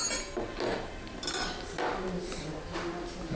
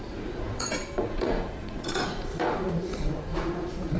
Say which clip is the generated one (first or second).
second